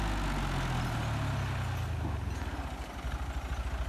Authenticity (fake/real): real